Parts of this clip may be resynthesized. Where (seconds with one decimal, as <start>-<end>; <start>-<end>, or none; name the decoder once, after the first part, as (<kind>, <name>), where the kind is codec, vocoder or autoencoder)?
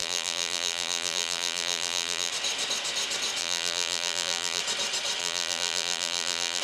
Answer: 0.0-2.3 (vocoder, BigVGAN v2); 3.4-4.6; 5.2-6.6